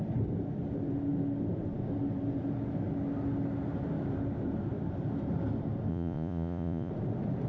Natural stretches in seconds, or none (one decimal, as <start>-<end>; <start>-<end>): 0.0-5.9; 6.9-7.5